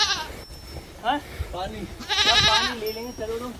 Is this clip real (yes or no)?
yes